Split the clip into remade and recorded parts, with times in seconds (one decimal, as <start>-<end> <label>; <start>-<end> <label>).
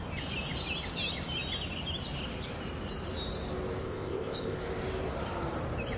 0.0-3.8 recorded; 3.8-4.6 remade; 4.6-6.0 recorded